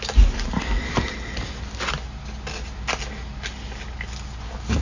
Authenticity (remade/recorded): recorded